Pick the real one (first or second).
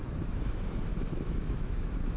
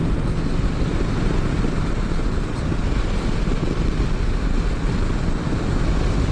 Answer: second